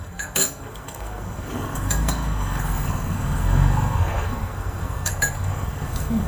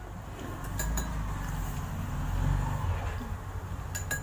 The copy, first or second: first